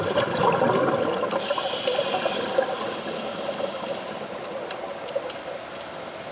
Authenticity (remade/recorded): recorded